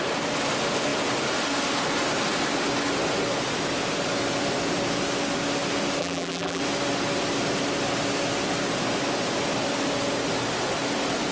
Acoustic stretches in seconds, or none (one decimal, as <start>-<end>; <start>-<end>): 0.0-6.0; 6.6-11.3